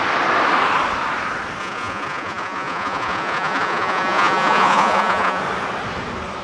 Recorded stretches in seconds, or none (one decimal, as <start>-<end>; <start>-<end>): 0.0-1.6; 5.4-6.4